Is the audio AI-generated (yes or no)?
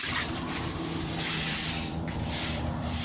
yes